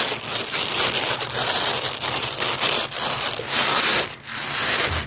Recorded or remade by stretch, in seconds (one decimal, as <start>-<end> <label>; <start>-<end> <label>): 0.0-5.1 recorded